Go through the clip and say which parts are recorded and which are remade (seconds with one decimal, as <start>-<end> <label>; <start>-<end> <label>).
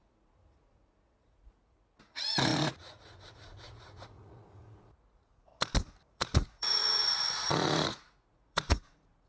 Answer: 0.0-5.5 remade; 5.5-6.1 recorded; 6.1-9.3 remade